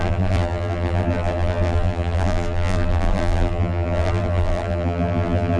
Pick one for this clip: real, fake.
fake